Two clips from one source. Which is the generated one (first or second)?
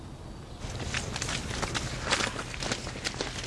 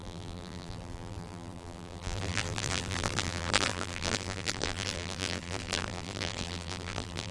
second